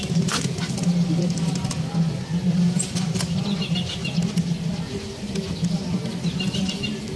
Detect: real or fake real